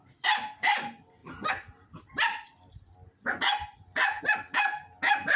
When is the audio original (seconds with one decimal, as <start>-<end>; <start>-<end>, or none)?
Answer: 0.0-5.4